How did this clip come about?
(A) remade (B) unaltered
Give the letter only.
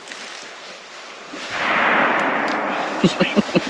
B